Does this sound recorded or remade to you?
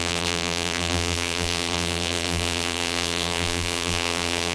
remade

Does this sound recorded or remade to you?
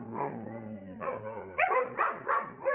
remade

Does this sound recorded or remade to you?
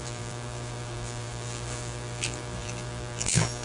remade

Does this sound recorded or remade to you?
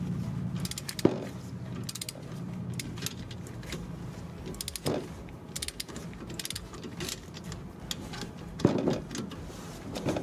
recorded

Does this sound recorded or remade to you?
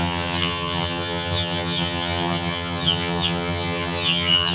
remade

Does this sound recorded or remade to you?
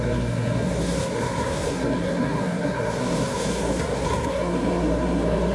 remade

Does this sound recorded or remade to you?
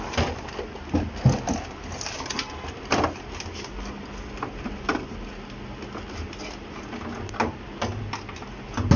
recorded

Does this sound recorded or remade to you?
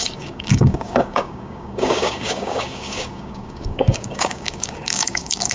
remade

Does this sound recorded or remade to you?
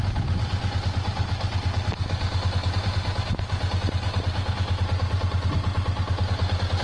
recorded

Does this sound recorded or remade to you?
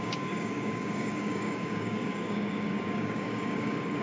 remade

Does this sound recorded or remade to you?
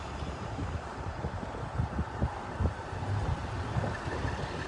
remade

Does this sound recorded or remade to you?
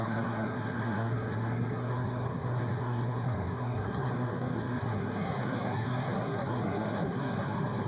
remade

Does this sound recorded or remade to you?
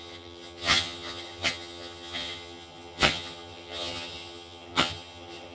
remade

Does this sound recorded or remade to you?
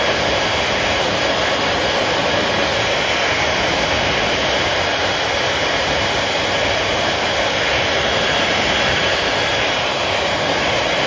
remade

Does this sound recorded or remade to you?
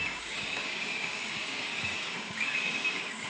remade